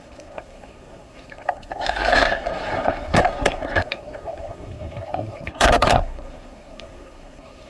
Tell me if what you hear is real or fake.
fake